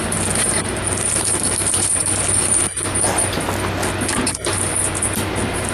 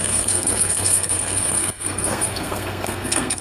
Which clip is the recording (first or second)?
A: first